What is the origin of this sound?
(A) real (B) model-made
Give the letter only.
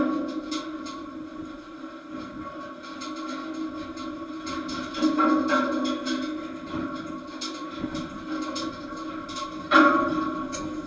A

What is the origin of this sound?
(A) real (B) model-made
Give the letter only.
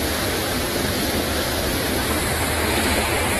A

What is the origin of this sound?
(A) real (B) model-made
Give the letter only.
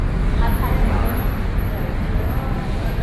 A